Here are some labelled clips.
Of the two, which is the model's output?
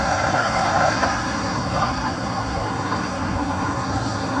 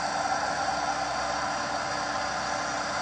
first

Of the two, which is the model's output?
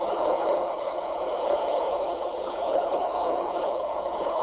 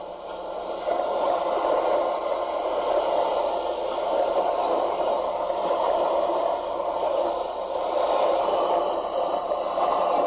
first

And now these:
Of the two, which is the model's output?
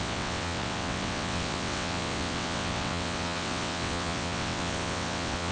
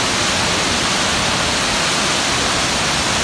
first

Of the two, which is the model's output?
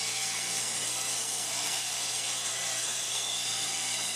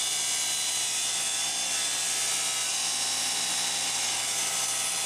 first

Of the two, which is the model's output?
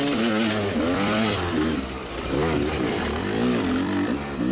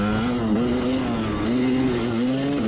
first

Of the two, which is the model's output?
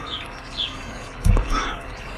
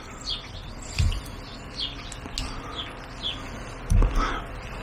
first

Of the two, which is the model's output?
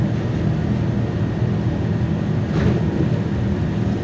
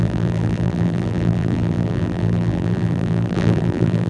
second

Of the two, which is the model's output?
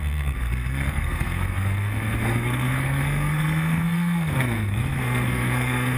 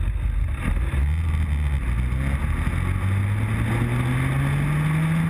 first